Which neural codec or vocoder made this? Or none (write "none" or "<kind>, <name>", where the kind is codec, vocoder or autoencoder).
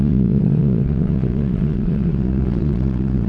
vocoder, Vocos